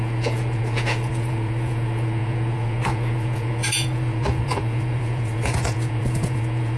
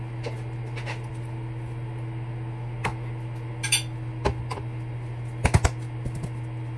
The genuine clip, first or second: second